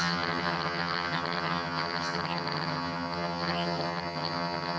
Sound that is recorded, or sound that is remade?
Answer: remade